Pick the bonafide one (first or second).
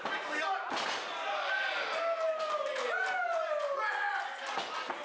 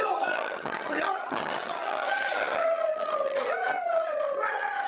first